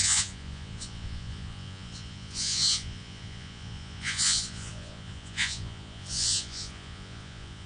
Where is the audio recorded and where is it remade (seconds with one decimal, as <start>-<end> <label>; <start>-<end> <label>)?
0.0-7.7 remade

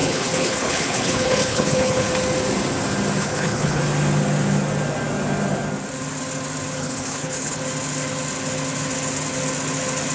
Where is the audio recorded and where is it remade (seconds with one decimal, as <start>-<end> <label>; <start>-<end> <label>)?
0.0-2.1 remade; 2.1-3.2 recorded; 3.2-3.8 remade; 3.8-6.8 recorded; 6.8-7.6 remade; 7.6-10.1 recorded